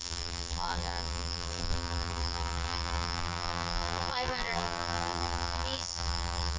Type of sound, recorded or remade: remade